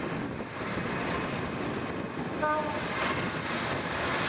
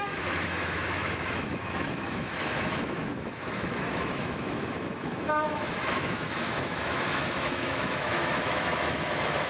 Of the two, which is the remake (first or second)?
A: second